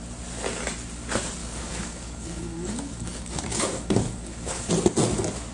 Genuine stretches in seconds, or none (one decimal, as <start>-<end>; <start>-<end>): 0.0-1.4; 4.7-5.5